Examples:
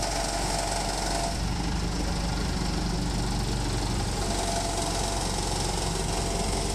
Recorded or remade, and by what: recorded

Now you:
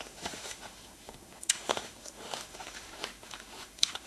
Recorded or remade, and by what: remade, autoencoder, DAC-VAE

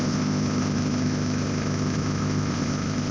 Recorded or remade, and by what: remade, codec, ZipCodec